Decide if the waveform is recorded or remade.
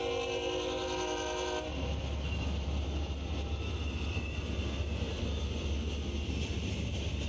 recorded